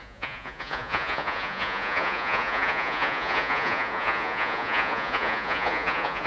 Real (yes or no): no